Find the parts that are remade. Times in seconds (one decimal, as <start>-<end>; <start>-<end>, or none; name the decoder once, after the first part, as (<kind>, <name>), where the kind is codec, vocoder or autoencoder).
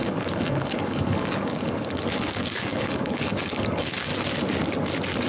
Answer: 0.0-4.1 (codec, DAC)